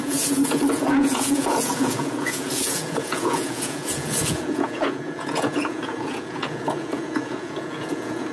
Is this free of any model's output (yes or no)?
no